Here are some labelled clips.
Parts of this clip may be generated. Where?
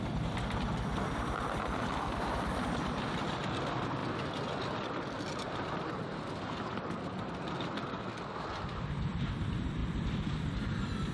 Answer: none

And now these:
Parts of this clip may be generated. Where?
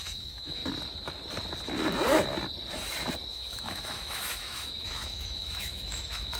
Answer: 0.0-0.6 (autoencoder, DAC-VAE); 3.3-6.4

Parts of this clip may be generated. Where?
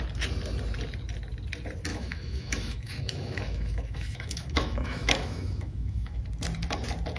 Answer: 1.9-6.2 (autoencoder, DAC-VAE)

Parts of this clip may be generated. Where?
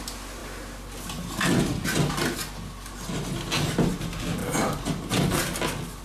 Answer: none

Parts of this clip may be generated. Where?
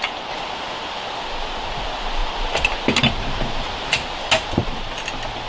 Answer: none